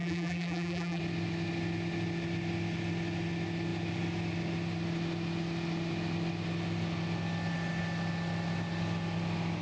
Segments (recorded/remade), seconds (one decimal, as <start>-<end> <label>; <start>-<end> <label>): 0.0-1.0 remade; 1.0-9.6 recorded